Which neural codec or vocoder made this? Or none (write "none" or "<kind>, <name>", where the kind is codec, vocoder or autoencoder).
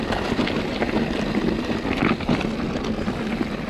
none